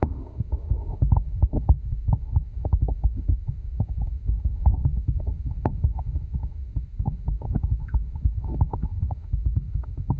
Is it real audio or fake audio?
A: fake